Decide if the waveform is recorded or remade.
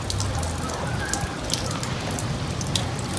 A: recorded